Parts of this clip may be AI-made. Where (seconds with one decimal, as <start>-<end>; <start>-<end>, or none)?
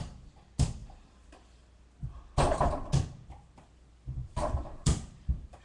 4.2-5.6